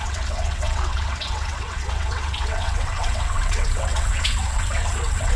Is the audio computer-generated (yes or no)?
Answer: yes